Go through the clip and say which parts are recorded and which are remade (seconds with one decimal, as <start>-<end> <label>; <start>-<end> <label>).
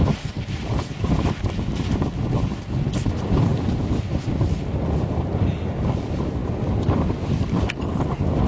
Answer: 0.0-3.5 remade; 3.5-5.0 recorded; 5.0-6.4 remade; 6.4-7.3 recorded; 7.3-8.5 remade